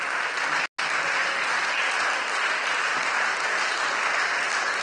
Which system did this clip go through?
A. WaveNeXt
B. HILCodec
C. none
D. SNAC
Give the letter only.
C